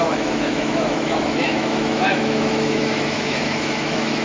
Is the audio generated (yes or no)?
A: yes